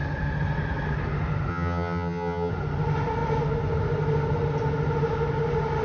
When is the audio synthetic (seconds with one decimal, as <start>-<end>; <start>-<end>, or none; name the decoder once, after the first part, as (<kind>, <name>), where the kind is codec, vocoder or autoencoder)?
1.5-2.5 (vocoder, HiFi-GAN)